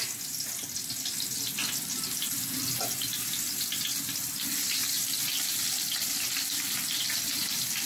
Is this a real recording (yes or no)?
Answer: yes